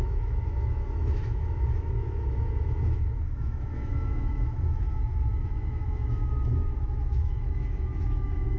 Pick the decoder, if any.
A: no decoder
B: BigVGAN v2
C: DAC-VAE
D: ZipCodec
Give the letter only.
C